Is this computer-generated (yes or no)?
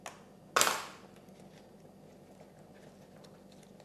no